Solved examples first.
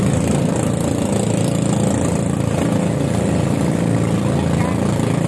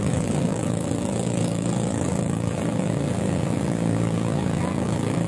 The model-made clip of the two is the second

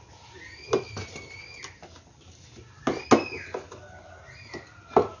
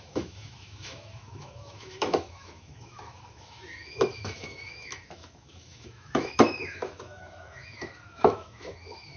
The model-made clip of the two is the second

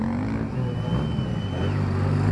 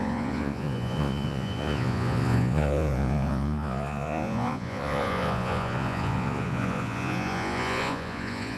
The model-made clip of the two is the second